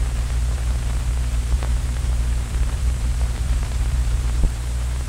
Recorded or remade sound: remade